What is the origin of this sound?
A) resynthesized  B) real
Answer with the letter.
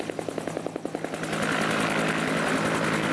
B